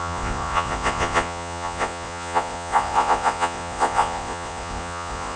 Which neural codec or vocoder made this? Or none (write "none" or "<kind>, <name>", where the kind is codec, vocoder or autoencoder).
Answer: vocoder, Vocos